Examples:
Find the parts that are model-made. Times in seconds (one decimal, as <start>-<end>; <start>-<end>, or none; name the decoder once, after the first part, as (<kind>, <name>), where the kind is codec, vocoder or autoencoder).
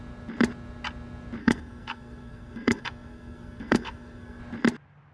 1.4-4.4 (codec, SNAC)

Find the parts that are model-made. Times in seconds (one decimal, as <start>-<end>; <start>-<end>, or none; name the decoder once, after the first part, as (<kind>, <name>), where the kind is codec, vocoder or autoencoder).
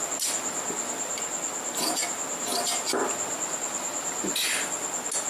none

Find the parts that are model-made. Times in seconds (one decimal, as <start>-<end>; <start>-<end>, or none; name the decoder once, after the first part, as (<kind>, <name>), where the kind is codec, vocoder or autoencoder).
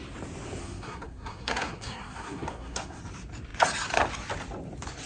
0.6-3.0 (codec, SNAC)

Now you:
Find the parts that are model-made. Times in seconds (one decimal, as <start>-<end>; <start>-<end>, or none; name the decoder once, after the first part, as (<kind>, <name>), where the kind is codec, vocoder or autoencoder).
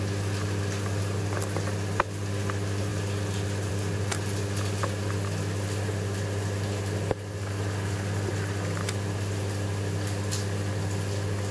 none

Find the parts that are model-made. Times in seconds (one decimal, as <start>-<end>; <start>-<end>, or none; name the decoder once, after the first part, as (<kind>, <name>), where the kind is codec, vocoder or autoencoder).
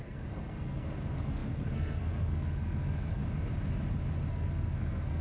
0.0-3.2 (codec, SNAC); 4.3-5.2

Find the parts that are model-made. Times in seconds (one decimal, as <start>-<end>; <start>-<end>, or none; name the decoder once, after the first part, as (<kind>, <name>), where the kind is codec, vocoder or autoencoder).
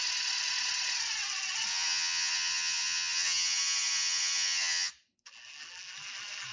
1.7-4.9 (vocoder, HiFi-GAN)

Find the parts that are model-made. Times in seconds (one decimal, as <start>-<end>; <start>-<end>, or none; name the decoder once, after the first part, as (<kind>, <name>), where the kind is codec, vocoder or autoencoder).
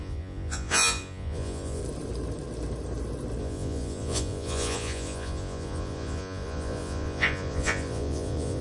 0.0-1.8 (vocoder, Vocos); 3.4-8.6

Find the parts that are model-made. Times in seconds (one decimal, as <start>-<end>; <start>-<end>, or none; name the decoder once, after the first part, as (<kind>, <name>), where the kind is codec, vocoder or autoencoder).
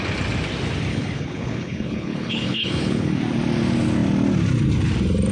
0.9-3.1 (codec, HILCodec)